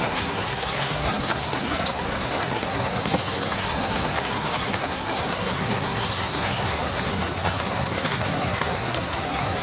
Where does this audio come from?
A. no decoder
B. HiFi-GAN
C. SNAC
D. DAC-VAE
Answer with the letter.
C